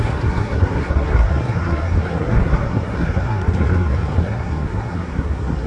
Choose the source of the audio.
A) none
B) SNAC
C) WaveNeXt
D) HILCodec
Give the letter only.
B